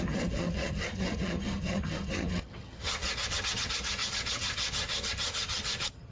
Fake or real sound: fake